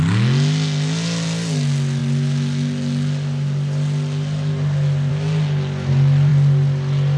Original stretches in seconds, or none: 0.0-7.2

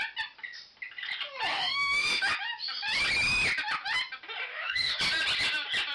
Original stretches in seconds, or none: 0.0-1.5; 2.3-4.5; 5.0-5.9

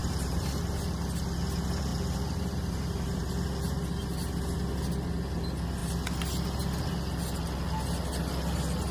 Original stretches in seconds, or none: 1.0-1.9; 3.3-8.9

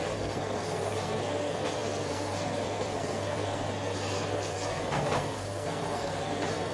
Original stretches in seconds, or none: none

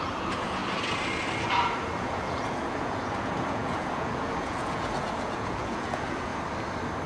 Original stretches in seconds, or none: 0.6-2.0; 6.3-7.1

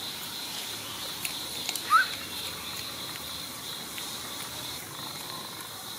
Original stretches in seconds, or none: none

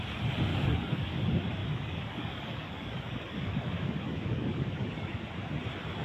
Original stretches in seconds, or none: 0.0-0.5; 1.2-1.6; 5.2-6.0